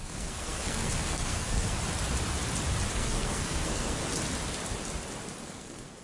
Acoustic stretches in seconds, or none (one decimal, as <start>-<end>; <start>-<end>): 1.8-2.9; 4.0-5.4